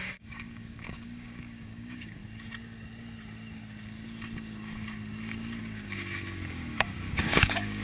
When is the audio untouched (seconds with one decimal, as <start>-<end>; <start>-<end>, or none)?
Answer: 2.2-5.6